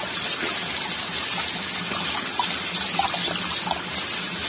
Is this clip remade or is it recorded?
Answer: recorded